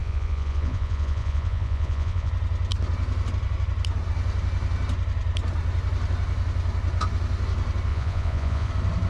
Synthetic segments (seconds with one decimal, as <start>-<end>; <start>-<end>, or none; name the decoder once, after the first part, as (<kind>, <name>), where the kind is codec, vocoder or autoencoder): 0.0-2.3 (vocoder, Vocos); 7.9-8.7